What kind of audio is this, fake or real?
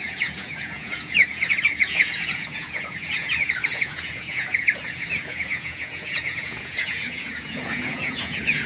fake